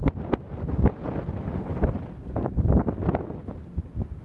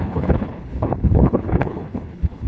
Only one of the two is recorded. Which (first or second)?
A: first